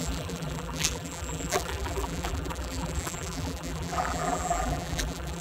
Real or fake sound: fake